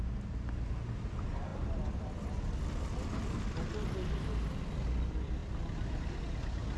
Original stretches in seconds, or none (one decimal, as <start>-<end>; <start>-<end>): 0.0-6.8